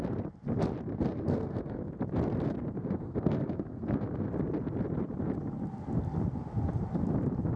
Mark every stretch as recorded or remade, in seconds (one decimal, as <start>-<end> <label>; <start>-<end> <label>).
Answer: 0.0-0.9 recorded; 0.9-1.9 remade; 1.9-2.8 recorded; 2.8-4.3 remade; 4.3-7.6 recorded